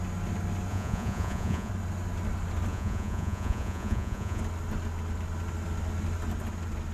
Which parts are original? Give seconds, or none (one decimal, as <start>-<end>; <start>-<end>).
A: 0.0-0.7; 1.7-2.7; 4.4-6.9